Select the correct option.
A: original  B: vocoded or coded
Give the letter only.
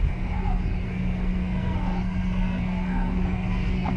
B